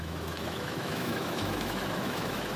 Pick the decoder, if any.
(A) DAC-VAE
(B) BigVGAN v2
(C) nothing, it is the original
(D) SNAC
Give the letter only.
A